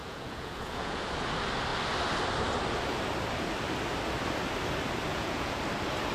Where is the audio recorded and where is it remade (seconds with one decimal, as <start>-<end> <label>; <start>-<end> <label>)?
0.0-1.0 remade; 1.0-5.1 recorded; 5.1-5.6 remade; 5.6-6.1 recorded